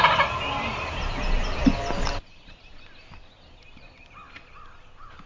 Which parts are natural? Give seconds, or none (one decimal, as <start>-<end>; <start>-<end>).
0.0-5.3